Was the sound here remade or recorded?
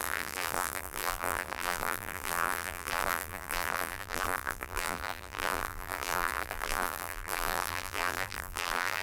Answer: remade